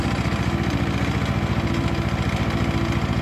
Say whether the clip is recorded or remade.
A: recorded